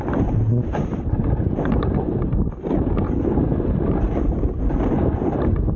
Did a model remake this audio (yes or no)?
no